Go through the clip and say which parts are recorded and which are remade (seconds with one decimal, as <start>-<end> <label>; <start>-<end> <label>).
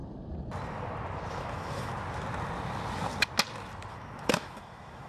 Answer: 0.0-1.3 recorded; 1.3-1.9 remade; 1.9-3.9 recorded; 3.9-5.1 remade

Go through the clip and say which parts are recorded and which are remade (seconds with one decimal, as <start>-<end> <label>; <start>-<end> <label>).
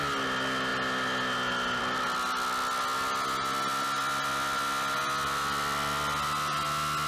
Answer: 0.0-7.1 recorded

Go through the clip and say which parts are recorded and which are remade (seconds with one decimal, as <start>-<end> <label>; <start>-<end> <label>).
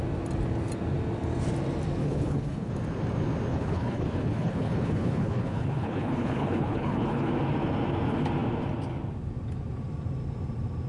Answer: 0.0-2.0 recorded; 2.0-2.7 remade; 2.7-3.5 recorded; 3.5-7.3 remade; 7.3-10.9 recorded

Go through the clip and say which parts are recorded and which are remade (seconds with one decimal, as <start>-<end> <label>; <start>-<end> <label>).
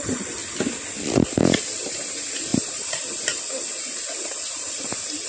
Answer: 0.0-0.4 remade; 0.4-1.3 recorded; 1.3-5.3 remade